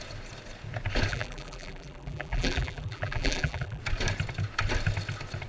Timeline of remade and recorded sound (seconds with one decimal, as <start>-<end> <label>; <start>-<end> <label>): 0.0-1.1 recorded; 1.1-3.8 remade; 3.8-5.5 recorded